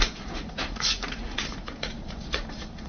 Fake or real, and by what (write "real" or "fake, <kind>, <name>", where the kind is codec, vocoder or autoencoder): fake, vocoder, Vocos